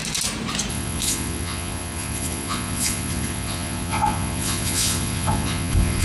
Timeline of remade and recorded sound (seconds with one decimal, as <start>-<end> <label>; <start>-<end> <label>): 0.0-0.7 recorded; 0.7-6.0 remade